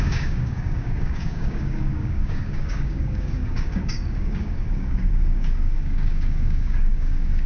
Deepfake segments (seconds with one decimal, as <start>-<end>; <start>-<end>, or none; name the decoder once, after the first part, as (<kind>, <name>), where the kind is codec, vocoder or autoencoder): 0.0-7.5 (codec, DAC)